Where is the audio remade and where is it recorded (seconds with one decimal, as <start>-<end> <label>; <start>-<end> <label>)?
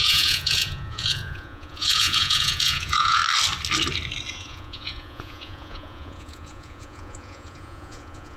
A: 0.0-3.2 remade; 3.2-4.3 recorded; 4.3-8.4 remade